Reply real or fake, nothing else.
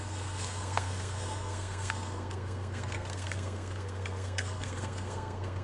fake